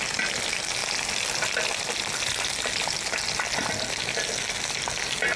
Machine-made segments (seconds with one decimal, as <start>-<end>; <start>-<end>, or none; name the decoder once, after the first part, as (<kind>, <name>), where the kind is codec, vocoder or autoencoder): none